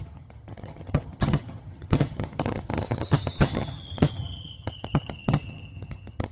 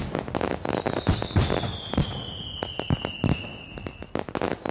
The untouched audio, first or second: second